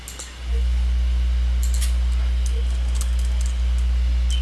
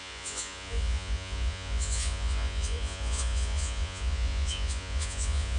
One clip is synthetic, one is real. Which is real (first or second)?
first